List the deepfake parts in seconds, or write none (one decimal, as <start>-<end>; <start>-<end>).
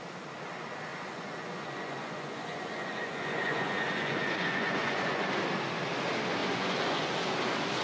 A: 0.9-5.2; 6.4-7.1